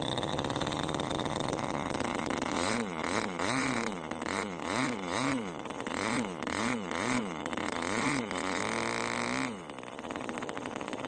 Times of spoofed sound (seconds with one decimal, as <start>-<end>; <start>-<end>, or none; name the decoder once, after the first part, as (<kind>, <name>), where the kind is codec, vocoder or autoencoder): 0.0-8.6 (vocoder, Vocos); 9.9-11.1